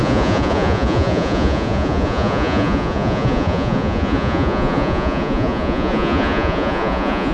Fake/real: fake